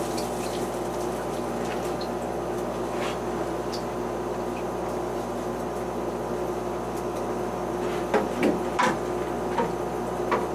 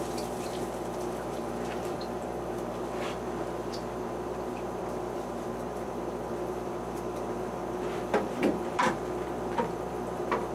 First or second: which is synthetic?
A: second